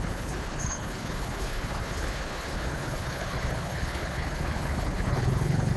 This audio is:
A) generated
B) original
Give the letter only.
A